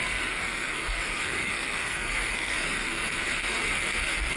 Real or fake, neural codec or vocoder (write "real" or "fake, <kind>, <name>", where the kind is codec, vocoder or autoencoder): fake, codec, SNAC